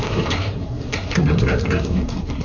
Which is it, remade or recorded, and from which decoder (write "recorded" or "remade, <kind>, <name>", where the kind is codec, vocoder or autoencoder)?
remade, codec, SNAC